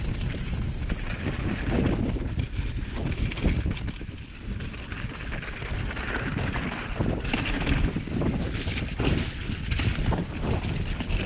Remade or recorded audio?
recorded